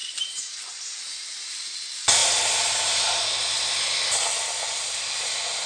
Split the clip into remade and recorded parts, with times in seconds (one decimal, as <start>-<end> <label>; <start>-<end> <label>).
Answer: 0.0-2.2 remade; 2.2-4.9 recorded; 4.9-5.7 remade